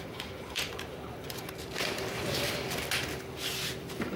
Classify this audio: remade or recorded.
remade